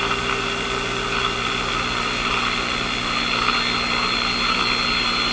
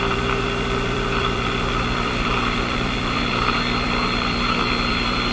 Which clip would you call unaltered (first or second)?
first